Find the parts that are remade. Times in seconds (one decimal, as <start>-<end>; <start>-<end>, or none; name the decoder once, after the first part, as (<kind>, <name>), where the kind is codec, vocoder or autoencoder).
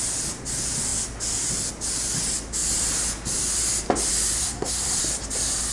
4.4-5.0 (codec, SNAC)